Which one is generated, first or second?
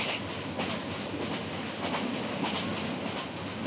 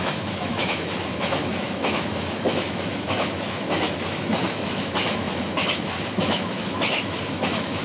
second